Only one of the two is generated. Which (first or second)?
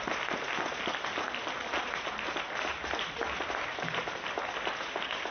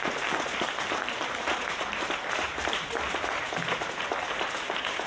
second